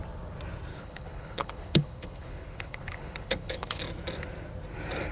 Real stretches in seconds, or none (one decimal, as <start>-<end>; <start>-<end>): 0.0-0.7; 3.8-5.1